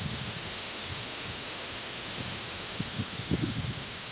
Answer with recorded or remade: remade